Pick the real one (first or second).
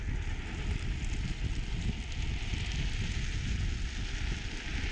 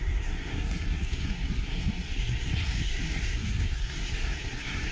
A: first